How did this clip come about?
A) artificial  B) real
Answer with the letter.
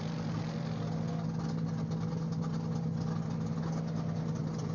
B